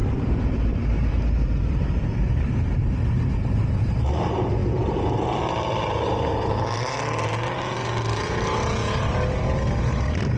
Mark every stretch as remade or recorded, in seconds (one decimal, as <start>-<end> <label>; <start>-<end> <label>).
0.0-4.1 remade; 4.1-10.4 recorded